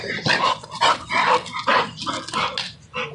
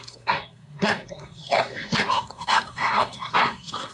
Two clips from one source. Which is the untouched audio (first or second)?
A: first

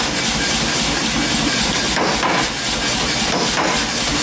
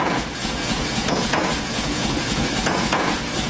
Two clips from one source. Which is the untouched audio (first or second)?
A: first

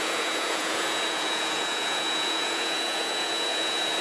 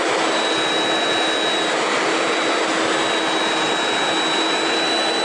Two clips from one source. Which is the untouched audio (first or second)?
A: second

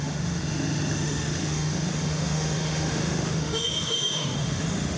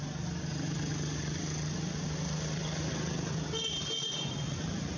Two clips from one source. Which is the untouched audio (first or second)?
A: second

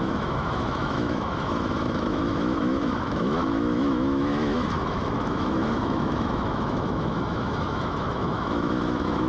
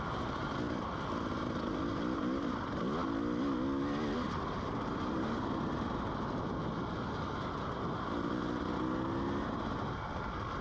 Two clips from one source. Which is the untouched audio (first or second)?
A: second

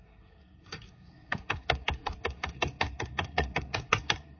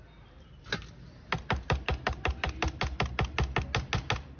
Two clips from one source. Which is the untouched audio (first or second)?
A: second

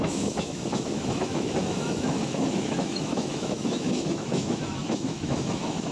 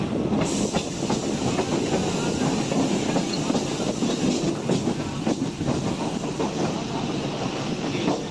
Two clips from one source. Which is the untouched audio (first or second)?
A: second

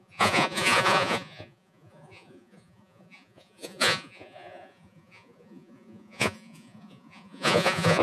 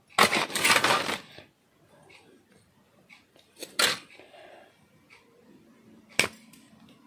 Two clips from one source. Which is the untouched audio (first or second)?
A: second